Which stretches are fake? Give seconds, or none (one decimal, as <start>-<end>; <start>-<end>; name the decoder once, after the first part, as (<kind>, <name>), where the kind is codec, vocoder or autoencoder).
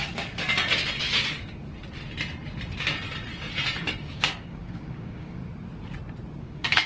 4.1-5.4 (codec, DAC); 6.4-6.9